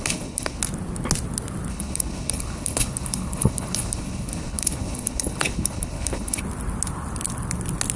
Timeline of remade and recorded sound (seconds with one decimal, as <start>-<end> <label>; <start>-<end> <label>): 0.0-0.6 remade; 0.6-1.7 recorded; 1.7-6.4 remade; 6.4-8.0 recorded